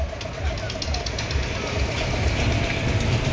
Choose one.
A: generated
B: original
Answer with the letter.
B